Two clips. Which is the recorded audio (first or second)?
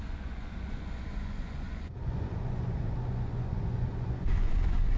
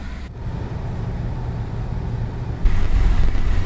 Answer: second